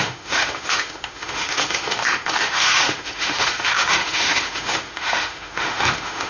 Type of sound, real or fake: fake